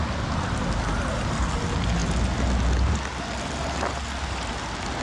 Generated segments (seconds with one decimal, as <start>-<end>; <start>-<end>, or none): none